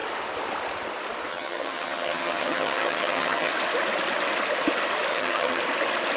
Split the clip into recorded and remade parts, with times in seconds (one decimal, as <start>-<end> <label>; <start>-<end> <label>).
0.0-1.3 recorded; 1.3-3.5 remade; 3.5-5.1 recorded; 5.1-5.6 remade; 5.6-6.2 recorded